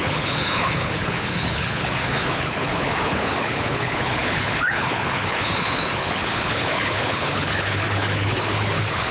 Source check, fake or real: fake